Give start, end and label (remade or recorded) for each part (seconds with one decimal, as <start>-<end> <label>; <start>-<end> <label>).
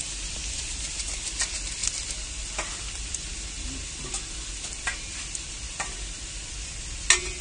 0.0-7.4 recorded